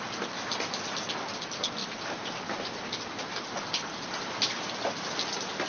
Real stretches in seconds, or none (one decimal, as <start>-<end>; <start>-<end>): 0.0-1.8; 4.7-5.7